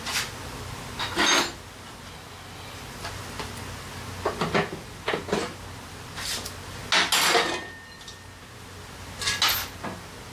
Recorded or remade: recorded